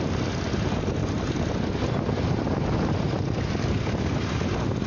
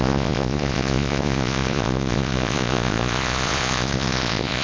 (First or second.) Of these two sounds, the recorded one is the first